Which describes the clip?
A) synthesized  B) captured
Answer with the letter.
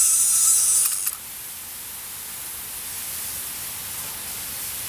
B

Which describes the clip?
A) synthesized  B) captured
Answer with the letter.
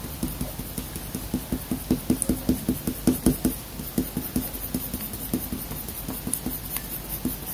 B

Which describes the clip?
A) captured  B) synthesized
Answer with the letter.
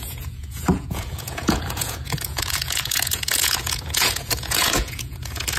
B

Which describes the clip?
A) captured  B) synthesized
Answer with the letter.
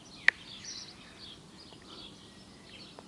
A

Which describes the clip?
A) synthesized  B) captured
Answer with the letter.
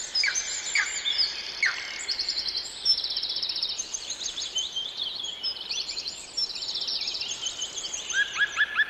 A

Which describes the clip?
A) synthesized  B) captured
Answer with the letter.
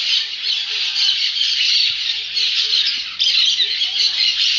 B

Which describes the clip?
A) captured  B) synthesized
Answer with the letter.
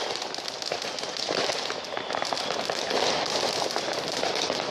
A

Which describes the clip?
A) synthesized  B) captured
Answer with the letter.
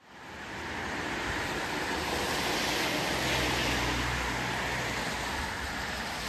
B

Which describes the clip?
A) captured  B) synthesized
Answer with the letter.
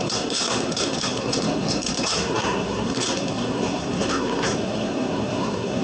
B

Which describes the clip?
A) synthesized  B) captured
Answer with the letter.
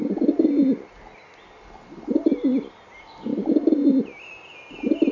B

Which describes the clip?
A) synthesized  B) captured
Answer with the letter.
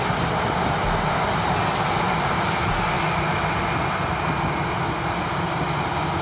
B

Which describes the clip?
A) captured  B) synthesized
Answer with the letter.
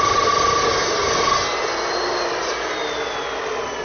A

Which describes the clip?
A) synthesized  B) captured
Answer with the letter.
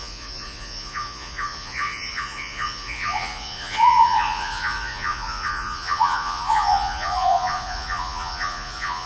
A